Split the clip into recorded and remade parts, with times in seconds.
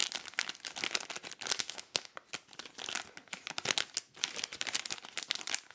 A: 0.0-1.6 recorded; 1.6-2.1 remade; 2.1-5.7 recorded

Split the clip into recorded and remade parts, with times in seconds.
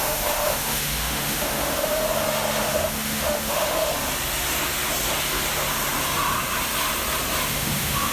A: 0.0-2.0 remade; 2.0-2.6 recorded; 2.6-3.9 remade; 3.9-7.5 recorded; 7.5-8.1 remade